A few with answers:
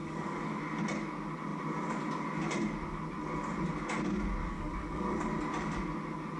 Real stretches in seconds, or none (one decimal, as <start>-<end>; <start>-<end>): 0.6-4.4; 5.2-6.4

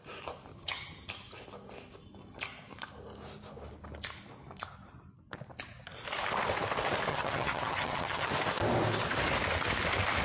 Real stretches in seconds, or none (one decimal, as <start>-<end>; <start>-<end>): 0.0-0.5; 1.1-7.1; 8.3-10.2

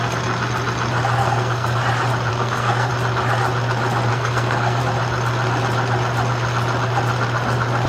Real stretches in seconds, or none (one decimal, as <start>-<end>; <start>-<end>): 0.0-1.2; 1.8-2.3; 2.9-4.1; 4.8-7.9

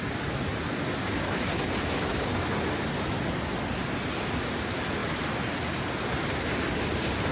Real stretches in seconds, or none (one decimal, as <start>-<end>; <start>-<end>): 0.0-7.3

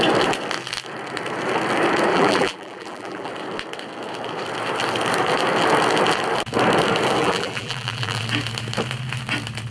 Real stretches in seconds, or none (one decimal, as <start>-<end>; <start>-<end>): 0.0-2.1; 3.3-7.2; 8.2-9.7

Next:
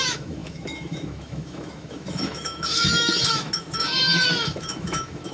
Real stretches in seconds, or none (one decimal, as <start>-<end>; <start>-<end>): none